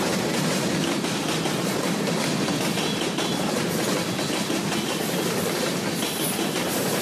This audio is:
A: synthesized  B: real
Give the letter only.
B